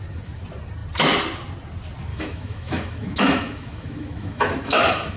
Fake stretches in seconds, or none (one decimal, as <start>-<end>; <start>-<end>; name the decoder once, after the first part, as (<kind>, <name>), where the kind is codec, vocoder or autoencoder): 2.1-5.2 (autoencoder, DAC-VAE)